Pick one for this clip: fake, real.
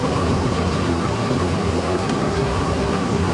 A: fake